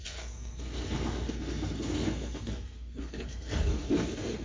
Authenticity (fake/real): fake